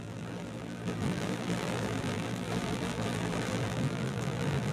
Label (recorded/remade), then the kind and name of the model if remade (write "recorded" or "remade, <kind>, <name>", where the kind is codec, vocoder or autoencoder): remade, vocoder, BigVGAN v2